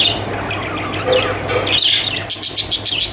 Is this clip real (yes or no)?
yes